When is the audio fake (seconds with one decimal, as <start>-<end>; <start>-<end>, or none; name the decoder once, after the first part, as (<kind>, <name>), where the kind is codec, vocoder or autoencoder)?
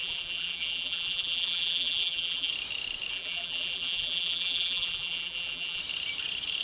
0.0-2.5 (vocoder, BigVGAN v2); 3.1-5.8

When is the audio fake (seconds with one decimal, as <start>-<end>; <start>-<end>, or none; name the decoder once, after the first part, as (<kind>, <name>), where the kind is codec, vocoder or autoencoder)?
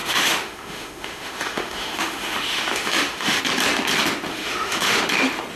0.0-3.4 (autoencoder, DAC-VAE); 4.3-5.0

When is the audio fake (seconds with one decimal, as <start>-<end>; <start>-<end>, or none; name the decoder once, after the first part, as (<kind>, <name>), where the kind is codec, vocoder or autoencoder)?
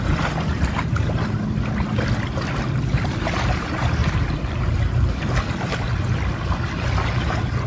none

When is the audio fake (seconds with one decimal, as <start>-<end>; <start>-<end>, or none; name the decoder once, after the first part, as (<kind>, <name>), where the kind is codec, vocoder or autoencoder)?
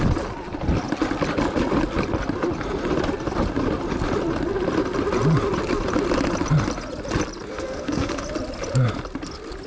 7.5-8.2 (codec, SNAC)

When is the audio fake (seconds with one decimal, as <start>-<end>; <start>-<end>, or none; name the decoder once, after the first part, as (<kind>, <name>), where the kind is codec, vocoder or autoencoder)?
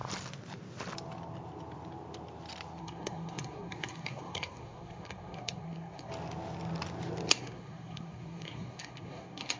2.8-6.1 (codec, SNAC); 7.3-9.6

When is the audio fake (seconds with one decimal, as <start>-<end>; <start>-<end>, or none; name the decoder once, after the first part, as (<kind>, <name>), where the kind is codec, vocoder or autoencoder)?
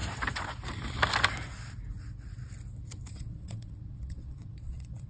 3.1-5.1 (vocoder, WaveNeXt)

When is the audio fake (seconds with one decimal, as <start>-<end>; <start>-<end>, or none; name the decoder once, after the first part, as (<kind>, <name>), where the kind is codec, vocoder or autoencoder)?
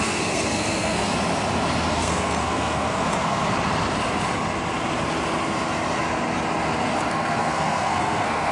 0.0-1.1 (codec, SNAC); 1.9-3.4; 7.1-8.5